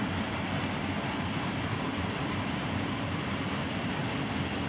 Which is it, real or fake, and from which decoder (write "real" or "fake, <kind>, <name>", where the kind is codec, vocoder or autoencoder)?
real